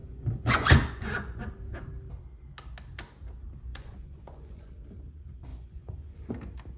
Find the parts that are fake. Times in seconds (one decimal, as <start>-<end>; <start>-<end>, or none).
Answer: 0.0-1.4; 3.7-4.7; 5.5-6.3